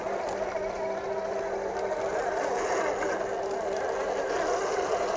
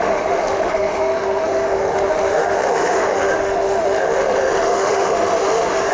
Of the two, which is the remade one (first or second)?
second